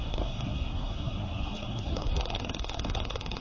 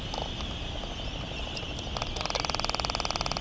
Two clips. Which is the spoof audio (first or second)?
first